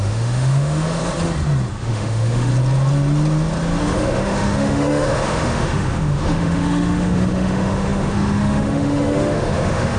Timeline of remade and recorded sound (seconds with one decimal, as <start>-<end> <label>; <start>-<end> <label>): 0.0-1.0 remade; 1.0-1.7 recorded; 1.7-2.5 remade; 2.5-3.8 recorded; 3.8-10.0 remade